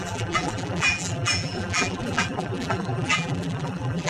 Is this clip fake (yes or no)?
yes